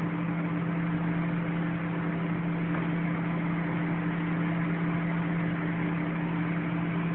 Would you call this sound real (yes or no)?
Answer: yes